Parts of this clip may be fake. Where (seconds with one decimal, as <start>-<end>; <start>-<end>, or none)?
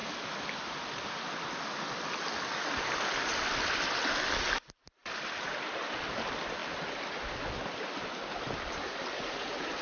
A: 4.5-5.0; 5.5-6.6; 8.0-9.8